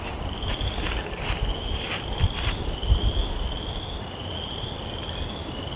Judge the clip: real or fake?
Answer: real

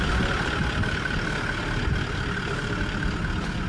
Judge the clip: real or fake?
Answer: real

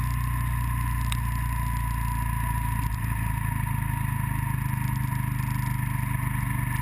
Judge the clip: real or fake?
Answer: real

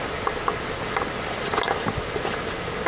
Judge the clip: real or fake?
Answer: real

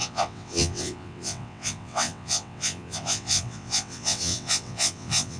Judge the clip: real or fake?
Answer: fake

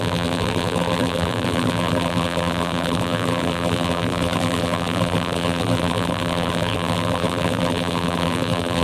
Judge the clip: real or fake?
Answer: fake